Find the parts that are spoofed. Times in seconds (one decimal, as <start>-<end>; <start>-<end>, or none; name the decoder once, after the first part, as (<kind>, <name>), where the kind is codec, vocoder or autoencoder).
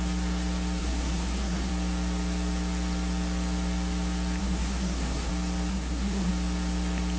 0.8-1.7 (codec, SNAC); 4.4-5.3; 5.7-6.3